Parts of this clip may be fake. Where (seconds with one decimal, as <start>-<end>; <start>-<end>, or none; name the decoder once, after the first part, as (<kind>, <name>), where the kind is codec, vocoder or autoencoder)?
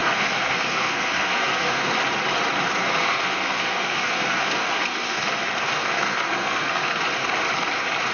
0.0-1.9 (codec, SNAC); 2.8-7.0